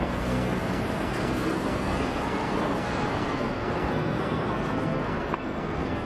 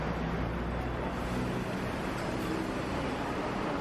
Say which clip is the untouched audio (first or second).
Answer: second